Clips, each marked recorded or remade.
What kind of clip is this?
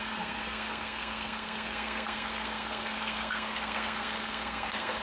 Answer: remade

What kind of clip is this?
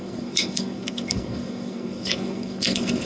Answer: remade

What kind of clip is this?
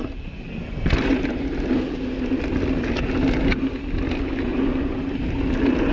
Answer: recorded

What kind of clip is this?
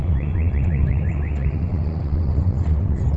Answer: remade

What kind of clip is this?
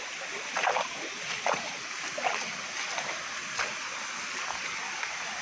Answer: recorded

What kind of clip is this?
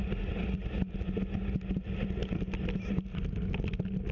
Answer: recorded